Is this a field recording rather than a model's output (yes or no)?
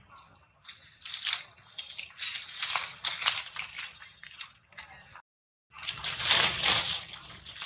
yes